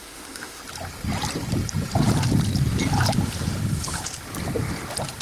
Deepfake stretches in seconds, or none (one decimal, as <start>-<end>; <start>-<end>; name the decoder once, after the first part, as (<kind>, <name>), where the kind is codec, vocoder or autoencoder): 0.0-0.6 (autoencoder, DAC-VAE)